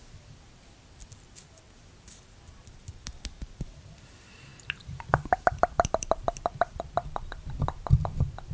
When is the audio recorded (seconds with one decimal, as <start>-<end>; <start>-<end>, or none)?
none